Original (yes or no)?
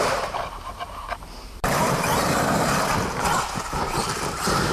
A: no